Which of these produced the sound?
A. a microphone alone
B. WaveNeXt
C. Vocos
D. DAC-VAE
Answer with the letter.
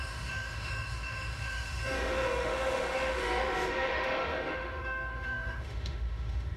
D